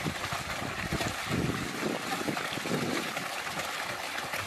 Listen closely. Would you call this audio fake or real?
real